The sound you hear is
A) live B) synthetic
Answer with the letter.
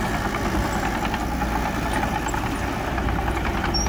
A